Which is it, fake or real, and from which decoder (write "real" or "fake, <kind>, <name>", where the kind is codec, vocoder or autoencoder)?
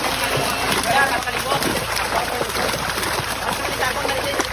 fake, vocoder, BigVGAN v2